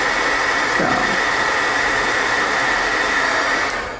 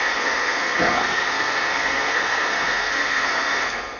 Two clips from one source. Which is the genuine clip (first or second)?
first